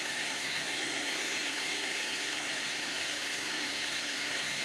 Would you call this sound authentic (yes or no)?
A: no